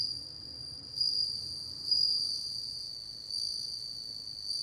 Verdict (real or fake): real